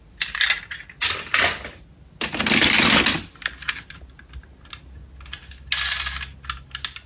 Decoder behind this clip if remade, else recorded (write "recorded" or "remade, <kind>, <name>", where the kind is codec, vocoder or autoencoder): recorded